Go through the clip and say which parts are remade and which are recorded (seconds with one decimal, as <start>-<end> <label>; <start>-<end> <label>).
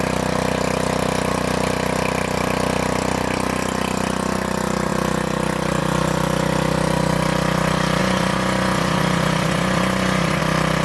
0.0-8.0 recorded; 8.0-10.4 remade; 10.4-10.8 recorded